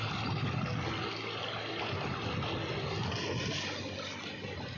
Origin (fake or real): real